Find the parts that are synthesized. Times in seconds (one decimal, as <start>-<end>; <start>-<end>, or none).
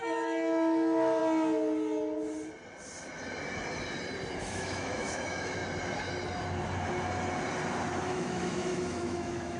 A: 0.0-1.2; 4.4-5.6; 8.1-9.6